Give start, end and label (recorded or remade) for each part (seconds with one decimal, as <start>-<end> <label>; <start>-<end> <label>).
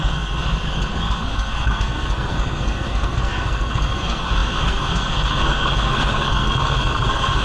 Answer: 0.0-7.4 remade